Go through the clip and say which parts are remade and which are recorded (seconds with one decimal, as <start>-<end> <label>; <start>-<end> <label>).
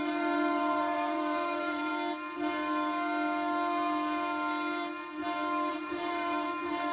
0.0-1.9 remade; 1.9-5.7 recorded; 5.7-6.9 remade